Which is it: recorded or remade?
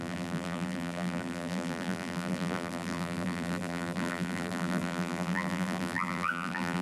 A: remade